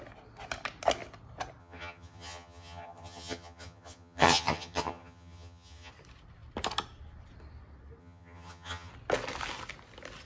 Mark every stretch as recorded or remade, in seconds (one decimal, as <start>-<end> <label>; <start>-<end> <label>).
0.0-1.6 recorded; 1.6-5.9 remade; 5.9-8.0 recorded; 8.0-8.9 remade; 8.9-10.3 recorded